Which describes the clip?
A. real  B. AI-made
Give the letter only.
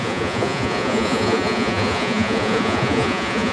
B